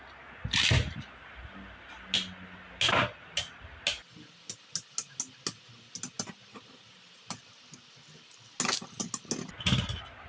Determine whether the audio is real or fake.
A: real